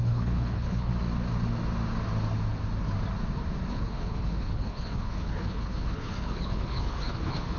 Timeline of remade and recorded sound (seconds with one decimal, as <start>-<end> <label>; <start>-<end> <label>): 0.0-0.9 remade; 0.9-3.7 recorded; 3.7-7.6 remade